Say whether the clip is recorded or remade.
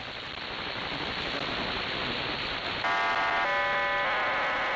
recorded